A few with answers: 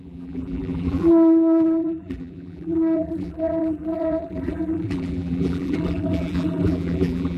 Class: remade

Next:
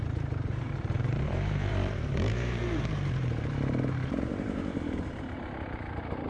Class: remade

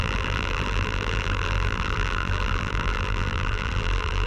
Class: remade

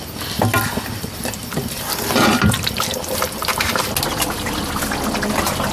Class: remade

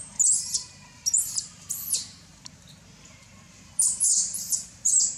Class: remade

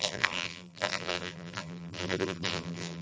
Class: remade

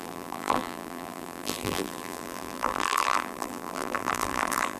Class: remade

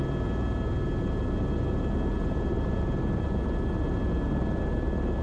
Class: recorded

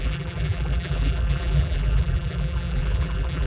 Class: remade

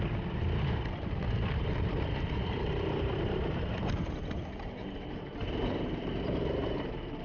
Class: remade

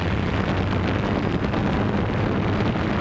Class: recorded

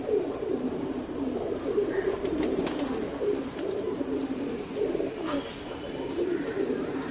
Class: remade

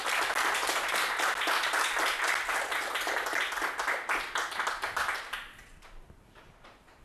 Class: recorded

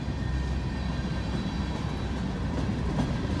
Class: recorded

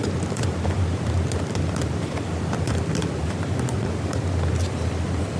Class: remade